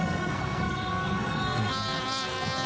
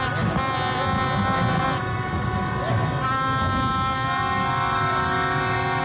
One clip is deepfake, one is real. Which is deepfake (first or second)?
first